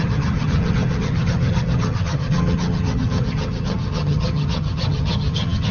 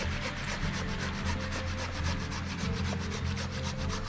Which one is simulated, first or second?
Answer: first